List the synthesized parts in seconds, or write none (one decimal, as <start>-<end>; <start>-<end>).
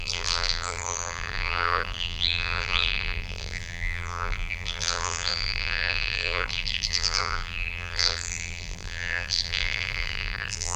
0.0-10.8